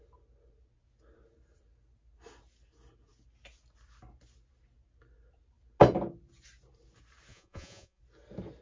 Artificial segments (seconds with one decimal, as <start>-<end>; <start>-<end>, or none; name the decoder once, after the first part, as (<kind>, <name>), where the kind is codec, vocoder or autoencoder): 7.3-8.0 (vocoder, Vocos)